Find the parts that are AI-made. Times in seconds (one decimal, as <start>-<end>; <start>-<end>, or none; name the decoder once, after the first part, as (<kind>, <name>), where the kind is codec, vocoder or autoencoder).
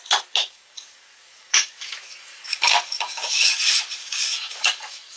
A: 0.4-3.5 (codec, DAC); 4.0-5.2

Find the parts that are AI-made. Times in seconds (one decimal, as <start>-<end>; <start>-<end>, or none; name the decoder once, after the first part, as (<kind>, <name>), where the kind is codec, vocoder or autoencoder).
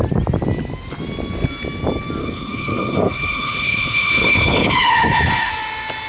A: 2.2-5.5 (codec, HILCodec)